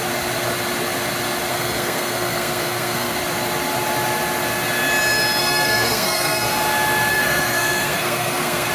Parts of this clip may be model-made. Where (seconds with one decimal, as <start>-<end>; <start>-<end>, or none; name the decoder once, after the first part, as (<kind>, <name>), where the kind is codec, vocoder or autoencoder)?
1.5-3.2 (codec, SNAC); 5.4-6.5; 7.1-8.7